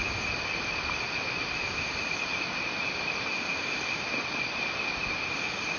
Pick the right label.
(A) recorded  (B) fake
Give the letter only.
B